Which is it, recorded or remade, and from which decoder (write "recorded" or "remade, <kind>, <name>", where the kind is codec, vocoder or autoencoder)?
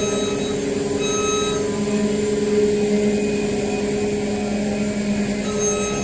recorded